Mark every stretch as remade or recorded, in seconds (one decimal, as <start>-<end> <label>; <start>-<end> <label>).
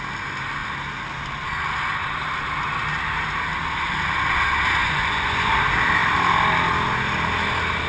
0.0-4.8 recorded; 4.8-5.5 remade; 5.5-7.9 recorded